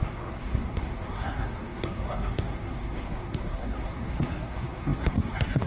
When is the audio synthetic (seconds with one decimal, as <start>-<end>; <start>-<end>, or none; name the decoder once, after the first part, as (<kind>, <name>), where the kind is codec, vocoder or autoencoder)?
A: 0.0-5.7 (codec, SNAC)